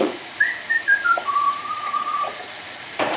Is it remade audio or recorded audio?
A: remade